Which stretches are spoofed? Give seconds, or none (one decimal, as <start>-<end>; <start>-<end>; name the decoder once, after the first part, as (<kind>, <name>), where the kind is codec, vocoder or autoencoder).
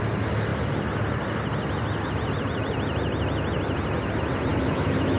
4.5-5.2 (autoencoder, DAC-VAE)